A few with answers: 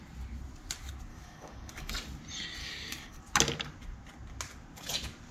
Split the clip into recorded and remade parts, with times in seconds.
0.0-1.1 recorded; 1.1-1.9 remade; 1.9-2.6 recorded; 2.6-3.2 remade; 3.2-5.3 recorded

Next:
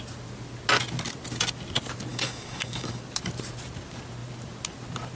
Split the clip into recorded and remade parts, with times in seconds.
0.0-2.1 recorded; 2.1-3.0 remade; 3.0-5.2 recorded

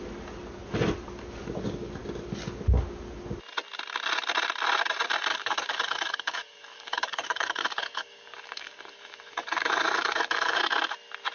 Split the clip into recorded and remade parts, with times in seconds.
0.0-5.3 recorded; 5.3-10.6 remade; 10.6-11.3 recorded

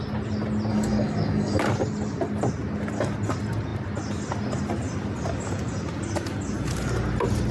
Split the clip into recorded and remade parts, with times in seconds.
0.0-0.7 recorded; 0.7-1.6 remade; 1.6-7.5 recorded

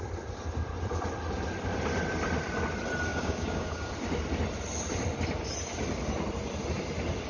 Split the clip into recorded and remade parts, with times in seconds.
0.0-3.1 recorded; 3.1-3.9 remade; 3.9-7.3 recorded

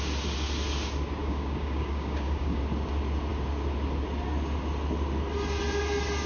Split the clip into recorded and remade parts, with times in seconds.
0.0-1.2 recorded; 1.2-2.6 remade; 2.6-6.3 recorded

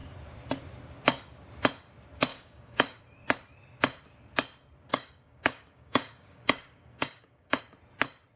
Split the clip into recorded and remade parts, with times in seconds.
0.0-2.3 recorded; 2.3-3.0 remade; 3.0-4.9 recorded; 4.9-7.6 remade; 7.6-8.4 recorded

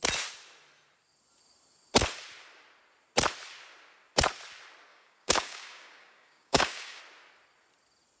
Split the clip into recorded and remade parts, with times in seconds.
0.0-4.9 recorded; 4.9-7.0 remade; 7.0-8.2 recorded